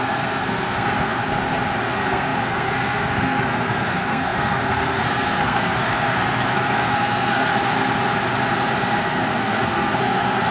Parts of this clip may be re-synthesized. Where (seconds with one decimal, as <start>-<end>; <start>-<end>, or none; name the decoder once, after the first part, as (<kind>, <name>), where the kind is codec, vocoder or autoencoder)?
0.0-1.2 (codec, SNAC); 1.9-7.5; 9.0-10.5